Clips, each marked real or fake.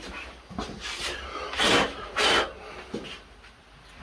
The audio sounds real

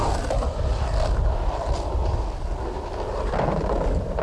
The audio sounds real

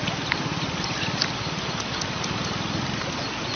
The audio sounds real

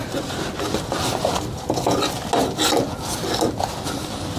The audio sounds real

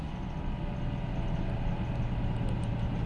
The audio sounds real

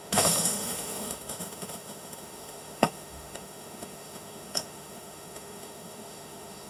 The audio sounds fake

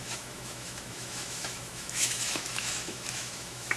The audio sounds fake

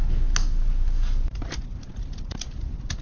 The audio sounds real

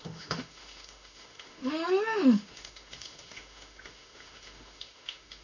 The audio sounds fake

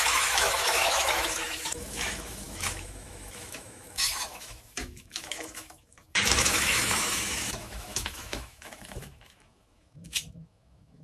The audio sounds fake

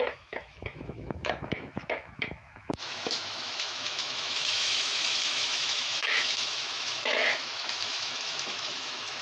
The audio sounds fake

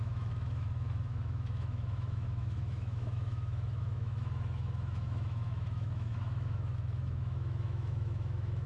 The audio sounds fake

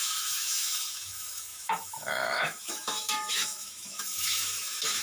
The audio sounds fake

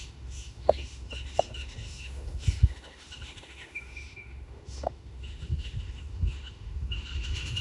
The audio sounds fake